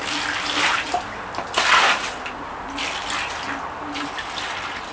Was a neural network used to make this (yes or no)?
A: no